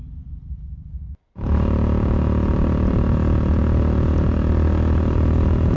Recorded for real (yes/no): yes